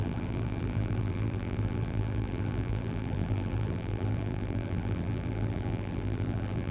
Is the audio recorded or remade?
remade